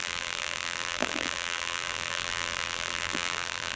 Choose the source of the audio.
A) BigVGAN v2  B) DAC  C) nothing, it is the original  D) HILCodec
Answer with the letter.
A